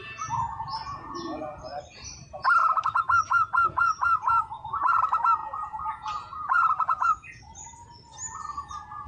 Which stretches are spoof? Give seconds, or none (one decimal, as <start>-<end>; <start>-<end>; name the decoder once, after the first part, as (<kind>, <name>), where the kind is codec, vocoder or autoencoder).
0.5-1.6 (vocoder, Vocos); 2.6-5.0; 5.4-7.4